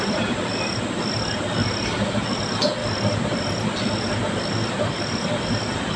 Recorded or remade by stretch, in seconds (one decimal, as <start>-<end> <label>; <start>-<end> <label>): 0.0-6.0 recorded